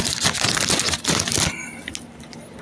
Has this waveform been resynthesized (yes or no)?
no